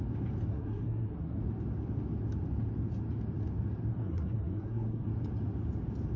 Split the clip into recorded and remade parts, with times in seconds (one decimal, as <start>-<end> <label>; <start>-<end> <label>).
0.0-0.5 recorded; 0.5-1.4 remade; 1.4-3.9 recorded; 3.9-5.1 remade; 5.1-6.2 recorded